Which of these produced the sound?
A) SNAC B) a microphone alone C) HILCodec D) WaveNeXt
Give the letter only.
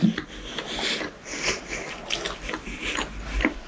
B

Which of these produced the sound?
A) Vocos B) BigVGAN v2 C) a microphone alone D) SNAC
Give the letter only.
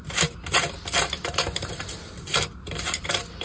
B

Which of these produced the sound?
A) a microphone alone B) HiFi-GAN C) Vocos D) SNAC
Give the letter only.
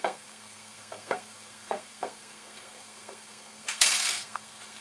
D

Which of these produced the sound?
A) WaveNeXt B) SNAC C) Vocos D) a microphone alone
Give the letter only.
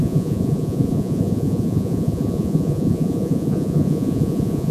C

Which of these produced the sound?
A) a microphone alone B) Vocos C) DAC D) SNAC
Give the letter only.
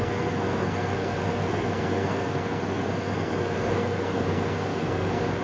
D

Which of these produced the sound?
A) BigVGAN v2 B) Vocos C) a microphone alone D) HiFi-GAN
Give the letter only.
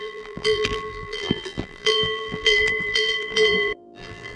A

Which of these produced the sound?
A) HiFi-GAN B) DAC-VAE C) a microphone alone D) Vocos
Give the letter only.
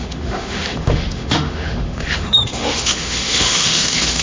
B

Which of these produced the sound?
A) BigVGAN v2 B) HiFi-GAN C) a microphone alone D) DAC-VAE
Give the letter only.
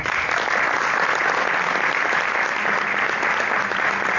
C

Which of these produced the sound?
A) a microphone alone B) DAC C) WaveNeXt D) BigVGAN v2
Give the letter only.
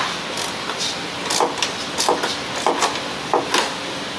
A